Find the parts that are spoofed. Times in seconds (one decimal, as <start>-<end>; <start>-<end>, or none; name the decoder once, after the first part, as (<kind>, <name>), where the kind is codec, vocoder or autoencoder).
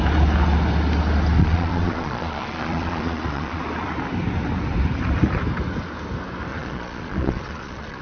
1.4-3.6 (vocoder, Vocos); 6.5-8.0